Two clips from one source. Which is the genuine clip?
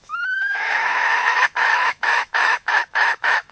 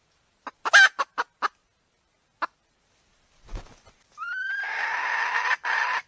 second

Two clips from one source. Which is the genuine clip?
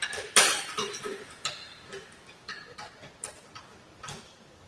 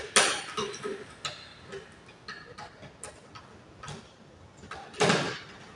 second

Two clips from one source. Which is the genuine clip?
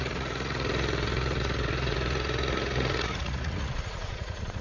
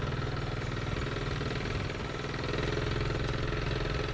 second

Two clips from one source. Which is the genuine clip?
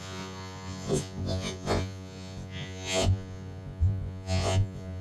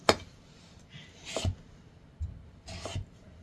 second